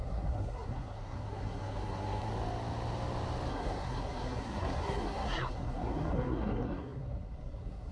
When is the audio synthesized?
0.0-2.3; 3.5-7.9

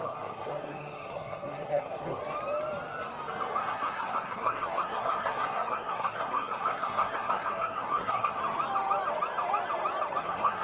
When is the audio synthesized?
0.0-2.2; 3.6-8.4; 10.2-10.6

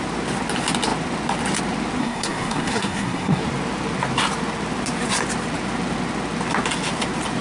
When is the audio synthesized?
2.0-3.4

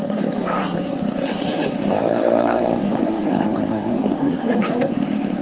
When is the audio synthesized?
0.0-5.4

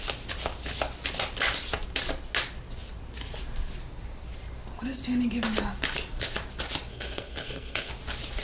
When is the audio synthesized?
6.9-7.9

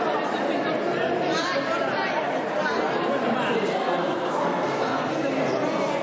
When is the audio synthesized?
3.7-5.1